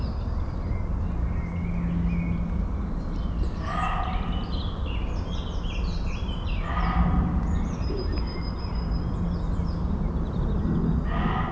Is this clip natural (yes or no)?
yes